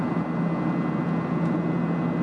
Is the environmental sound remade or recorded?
recorded